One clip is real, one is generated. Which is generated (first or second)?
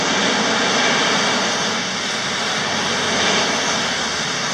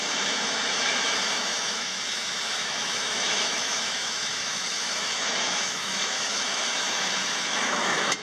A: second